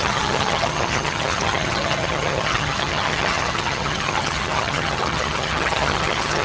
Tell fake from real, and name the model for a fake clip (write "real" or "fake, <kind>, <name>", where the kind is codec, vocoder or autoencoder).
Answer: fake, vocoder, HiFi-GAN